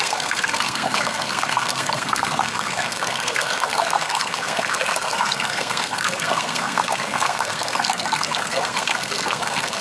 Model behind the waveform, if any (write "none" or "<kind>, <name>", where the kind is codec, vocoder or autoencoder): codec, SNAC